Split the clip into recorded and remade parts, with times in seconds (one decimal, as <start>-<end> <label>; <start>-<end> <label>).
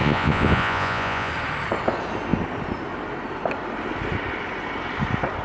0.0-1.3 remade; 1.3-5.4 recorded